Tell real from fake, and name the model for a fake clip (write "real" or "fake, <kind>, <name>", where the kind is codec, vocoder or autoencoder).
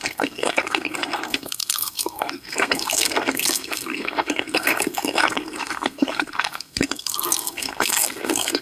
fake, codec, SNAC